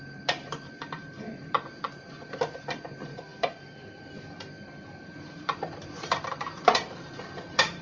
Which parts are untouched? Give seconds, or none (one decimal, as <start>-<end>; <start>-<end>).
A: none